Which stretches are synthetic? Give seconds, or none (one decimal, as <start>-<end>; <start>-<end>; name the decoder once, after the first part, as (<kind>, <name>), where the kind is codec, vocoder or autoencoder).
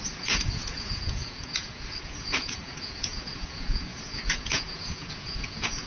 0.0-5.9 (vocoder, Vocos)